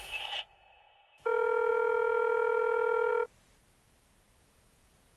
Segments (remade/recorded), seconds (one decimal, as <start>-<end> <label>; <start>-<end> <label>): 0.0-3.1 remade; 3.1-4.4 recorded; 4.4-5.2 remade